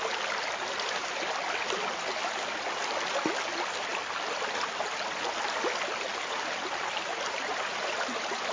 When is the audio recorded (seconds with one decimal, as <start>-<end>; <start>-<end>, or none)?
0.0-8.5